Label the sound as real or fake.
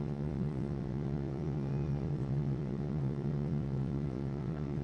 fake